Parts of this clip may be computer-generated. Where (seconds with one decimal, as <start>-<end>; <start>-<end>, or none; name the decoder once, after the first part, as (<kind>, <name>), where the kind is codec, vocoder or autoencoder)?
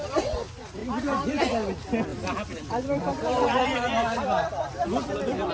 2.1-5.5 (vocoder, BigVGAN v2)